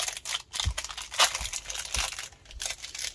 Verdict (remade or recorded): recorded